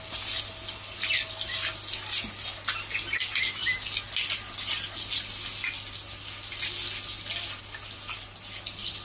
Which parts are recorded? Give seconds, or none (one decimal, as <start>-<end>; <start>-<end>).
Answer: 0.0-9.0